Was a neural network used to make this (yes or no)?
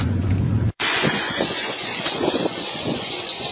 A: yes